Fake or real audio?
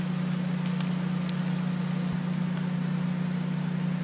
real